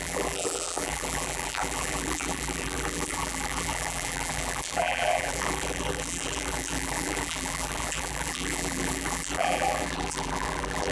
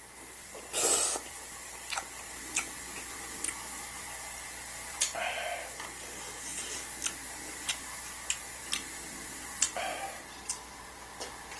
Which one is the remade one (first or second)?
first